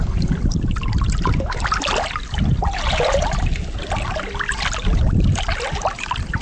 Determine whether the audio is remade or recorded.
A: recorded